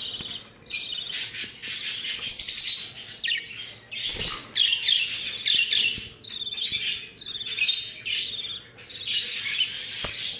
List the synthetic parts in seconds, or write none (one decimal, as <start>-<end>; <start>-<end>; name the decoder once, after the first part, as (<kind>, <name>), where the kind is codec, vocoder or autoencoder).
none